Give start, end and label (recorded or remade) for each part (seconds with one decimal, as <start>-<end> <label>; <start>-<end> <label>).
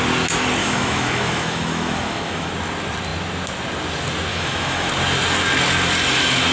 0.0-0.6 recorded; 0.6-2.5 remade; 2.5-4.3 recorded; 4.3-4.9 remade; 4.9-6.5 recorded